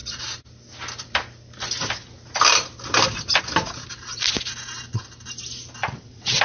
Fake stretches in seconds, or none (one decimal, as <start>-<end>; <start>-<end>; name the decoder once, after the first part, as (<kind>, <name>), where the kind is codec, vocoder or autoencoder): 5.8-6.4 (vocoder, WaveNeXt)